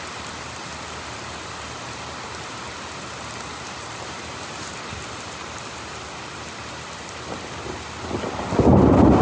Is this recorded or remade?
recorded